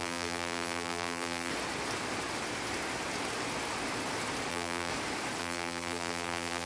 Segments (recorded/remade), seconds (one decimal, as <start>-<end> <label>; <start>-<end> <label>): 0.0-1.5 remade; 1.5-4.5 recorded; 4.5-4.9 remade; 4.9-5.4 recorded; 5.4-6.7 remade